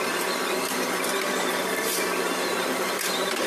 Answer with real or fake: fake